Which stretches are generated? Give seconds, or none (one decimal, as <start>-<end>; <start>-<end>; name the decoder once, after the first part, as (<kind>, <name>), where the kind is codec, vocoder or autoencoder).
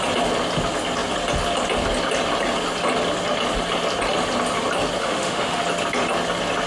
5.0-5.6 (autoencoder, DAC-VAE)